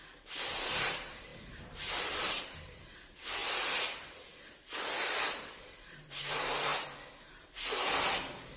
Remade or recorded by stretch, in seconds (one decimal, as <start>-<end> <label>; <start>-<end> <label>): 0.0-3.4 remade; 3.4-5.2 recorded; 5.2-6.7 remade; 6.7-7.3 recorded; 7.3-8.6 remade